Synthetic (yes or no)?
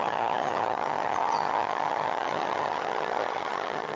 yes